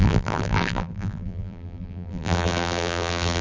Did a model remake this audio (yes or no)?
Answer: yes